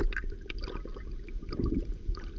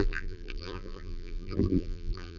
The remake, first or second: second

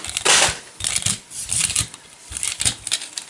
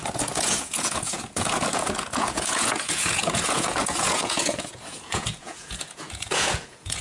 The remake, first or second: second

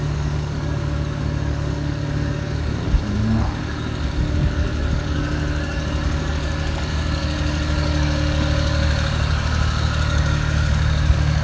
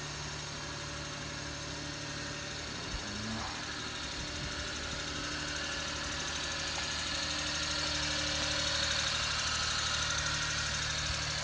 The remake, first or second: first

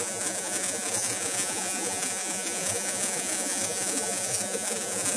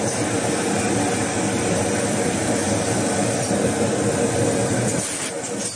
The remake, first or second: first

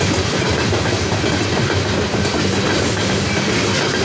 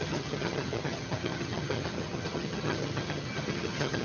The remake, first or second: second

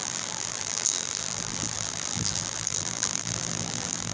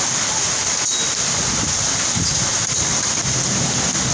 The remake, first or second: first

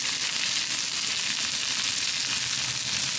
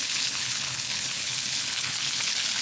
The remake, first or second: second